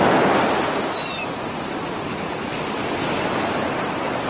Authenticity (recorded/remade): recorded